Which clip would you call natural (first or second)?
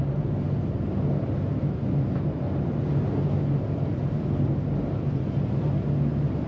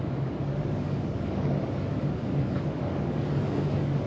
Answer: first